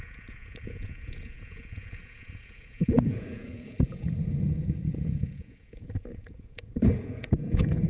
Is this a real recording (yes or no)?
no